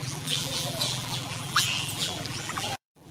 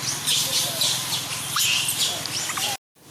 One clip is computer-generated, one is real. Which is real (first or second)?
second